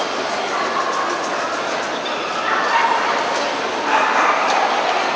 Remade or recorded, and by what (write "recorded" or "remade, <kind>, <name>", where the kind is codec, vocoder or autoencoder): recorded